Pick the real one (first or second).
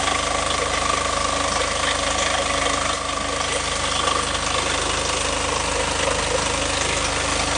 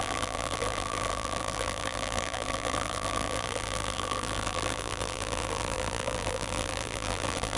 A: first